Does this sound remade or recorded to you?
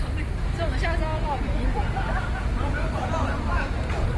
recorded